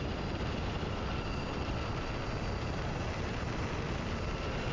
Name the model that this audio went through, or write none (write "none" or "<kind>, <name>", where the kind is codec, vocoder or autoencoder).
none